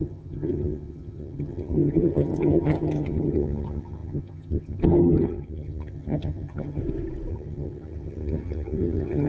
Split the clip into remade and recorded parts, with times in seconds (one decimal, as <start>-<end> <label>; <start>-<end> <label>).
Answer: 0.0-6.8 remade; 6.8-7.3 recorded; 7.3-9.3 remade